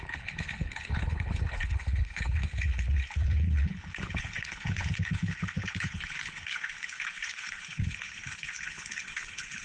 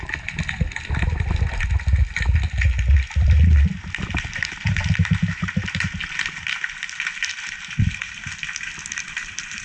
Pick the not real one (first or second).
first